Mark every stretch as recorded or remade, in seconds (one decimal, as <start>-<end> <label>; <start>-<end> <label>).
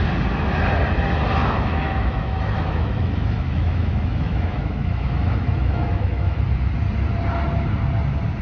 0.0-1.4 recorded; 1.4-6.4 remade; 6.4-8.4 recorded